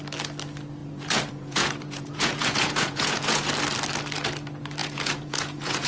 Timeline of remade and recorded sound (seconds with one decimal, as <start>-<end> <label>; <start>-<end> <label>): 0.0-0.8 recorded; 0.8-3.5 remade; 3.5-4.8 recorded; 4.8-5.9 remade